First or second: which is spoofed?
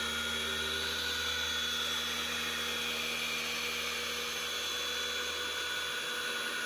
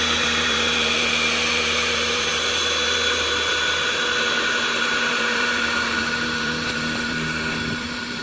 second